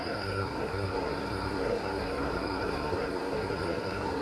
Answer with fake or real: fake